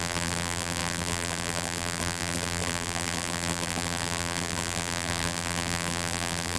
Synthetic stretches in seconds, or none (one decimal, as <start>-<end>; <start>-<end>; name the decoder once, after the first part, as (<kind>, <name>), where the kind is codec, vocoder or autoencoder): 0.0-6.6 (vocoder, BigVGAN v2)